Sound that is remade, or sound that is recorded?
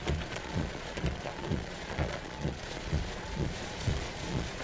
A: remade